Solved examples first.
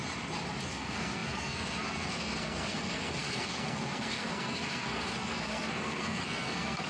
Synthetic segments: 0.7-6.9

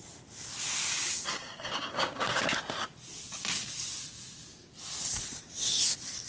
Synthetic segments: 0.9-2.6

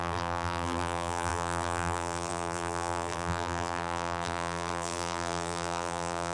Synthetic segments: 0.0-6.3

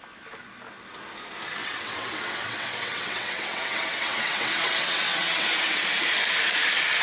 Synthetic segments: 1.6-5.8

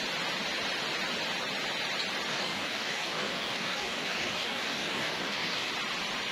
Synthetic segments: 2.3-5.7